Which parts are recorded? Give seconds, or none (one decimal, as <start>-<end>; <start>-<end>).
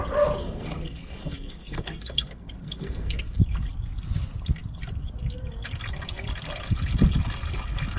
0.0-0.4; 3.4-8.0